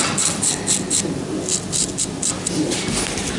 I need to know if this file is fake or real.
real